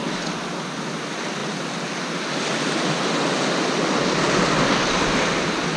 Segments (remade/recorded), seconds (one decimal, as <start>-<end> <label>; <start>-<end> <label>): 0.0-5.8 recorded

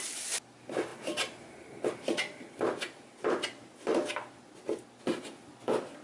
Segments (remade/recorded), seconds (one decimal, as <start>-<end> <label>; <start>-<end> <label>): 0.0-6.0 recorded